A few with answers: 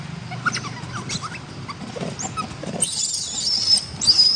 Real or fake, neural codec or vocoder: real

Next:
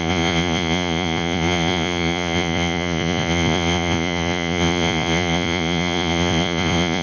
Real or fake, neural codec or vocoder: fake, vocoder, Vocos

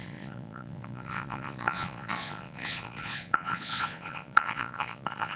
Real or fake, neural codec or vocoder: fake, vocoder, Vocos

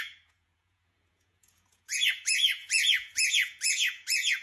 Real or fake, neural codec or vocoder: fake, vocoder, Vocos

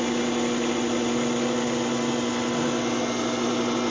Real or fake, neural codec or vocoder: real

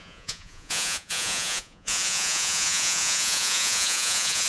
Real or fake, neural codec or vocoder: fake, vocoder, Vocos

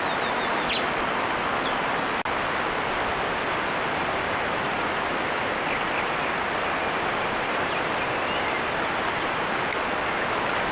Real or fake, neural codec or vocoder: real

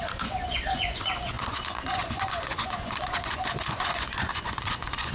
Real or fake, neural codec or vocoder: fake, vocoder, Vocos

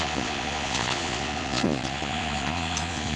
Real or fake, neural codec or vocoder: fake, vocoder, Vocos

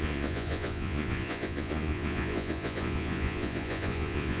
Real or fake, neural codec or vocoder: fake, vocoder, Vocos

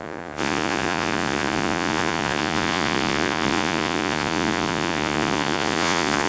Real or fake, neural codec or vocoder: fake, vocoder, Vocos